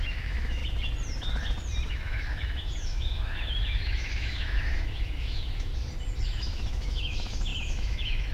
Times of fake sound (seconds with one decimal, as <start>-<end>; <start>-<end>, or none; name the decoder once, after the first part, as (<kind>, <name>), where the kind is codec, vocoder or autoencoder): 0.0-0.6 (autoencoder, DAC-VAE); 1.9-5.7; 6.2-8.3